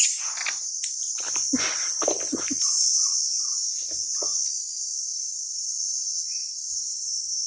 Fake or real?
real